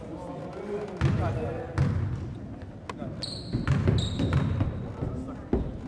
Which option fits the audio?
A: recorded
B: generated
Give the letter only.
A